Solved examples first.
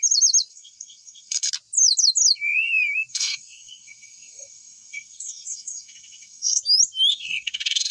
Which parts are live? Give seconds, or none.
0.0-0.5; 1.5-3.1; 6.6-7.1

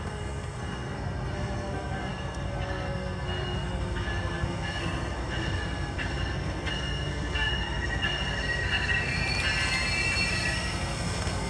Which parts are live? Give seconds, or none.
9.2-10.3

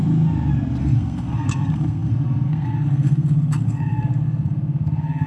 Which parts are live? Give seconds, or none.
0.0-0.8

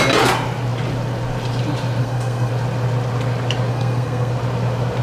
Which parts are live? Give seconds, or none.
0.0-2.0; 2.5-3.7; 4.3-5.0

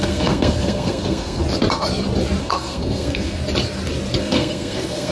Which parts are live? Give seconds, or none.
1.4-2.4; 3.4-4.2